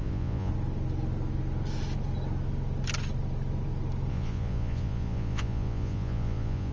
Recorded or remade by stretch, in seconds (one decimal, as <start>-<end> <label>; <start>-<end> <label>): 0.0-0.5 remade; 0.5-4.1 recorded; 4.1-6.7 remade